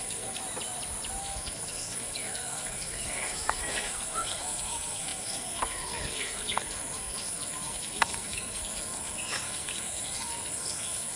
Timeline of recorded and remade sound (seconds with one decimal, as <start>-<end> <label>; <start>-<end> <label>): 0.0-0.4 remade; 0.4-1.2 recorded; 1.2-11.2 remade